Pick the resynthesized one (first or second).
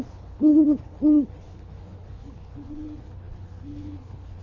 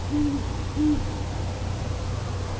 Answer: first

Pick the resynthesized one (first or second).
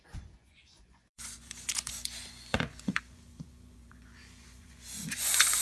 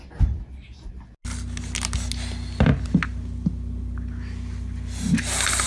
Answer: first